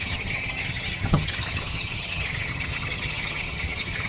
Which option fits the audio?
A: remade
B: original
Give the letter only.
A